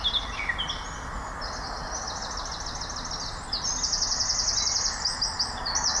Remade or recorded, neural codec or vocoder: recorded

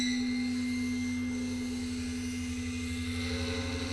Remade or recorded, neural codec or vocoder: recorded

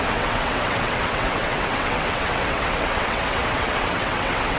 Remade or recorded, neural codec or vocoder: remade, vocoder, WaveNeXt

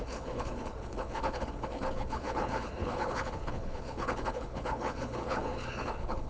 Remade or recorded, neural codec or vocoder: remade, codec, HILCodec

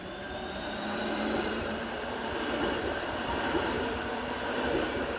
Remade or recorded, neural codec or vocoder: remade, vocoder, BigVGAN v2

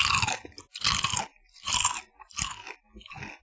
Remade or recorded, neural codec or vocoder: recorded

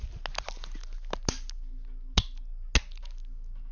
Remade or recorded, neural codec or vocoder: recorded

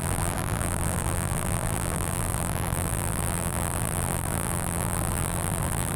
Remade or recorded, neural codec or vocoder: remade, vocoder, BigVGAN v2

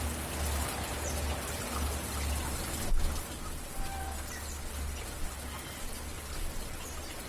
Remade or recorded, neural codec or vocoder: recorded